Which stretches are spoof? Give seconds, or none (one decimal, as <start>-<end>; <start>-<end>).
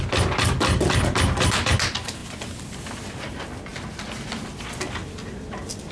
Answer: none